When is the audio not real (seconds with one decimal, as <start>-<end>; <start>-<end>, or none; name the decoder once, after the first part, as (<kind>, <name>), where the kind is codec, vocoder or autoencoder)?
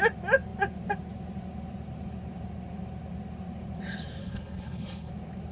4.2-5.1 (codec, HILCodec)